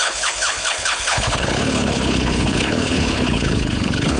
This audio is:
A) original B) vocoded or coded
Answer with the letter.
B